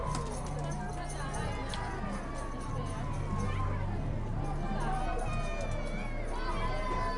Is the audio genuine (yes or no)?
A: yes